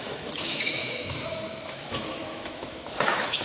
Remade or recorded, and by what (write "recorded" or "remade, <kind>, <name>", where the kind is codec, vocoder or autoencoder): remade, autoencoder, DAC-VAE